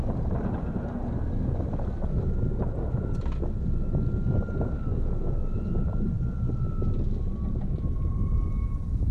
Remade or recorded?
recorded